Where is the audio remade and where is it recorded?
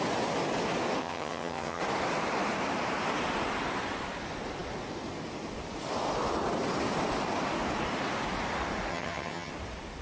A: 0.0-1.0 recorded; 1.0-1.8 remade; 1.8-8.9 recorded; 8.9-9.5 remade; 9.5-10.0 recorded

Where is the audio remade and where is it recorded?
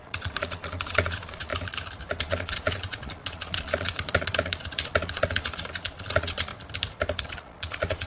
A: 0.0-1.5 remade; 1.5-2.2 recorded; 2.2-6.5 remade; 6.5-7.2 recorded; 7.2-8.1 remade